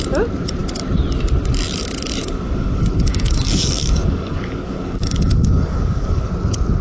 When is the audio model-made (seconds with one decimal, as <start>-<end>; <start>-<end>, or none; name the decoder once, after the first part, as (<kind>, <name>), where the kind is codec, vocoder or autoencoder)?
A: 2.2-6.3 (codec, DAC)